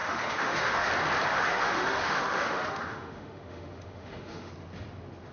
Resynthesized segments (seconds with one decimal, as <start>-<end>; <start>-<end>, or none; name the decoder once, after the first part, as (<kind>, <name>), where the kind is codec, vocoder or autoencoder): 0.0-0.9 (autoencoder, DAC-VAE); 1.3-4.5